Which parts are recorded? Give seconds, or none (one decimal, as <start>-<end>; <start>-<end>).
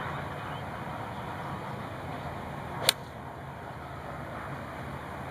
0.0-5.3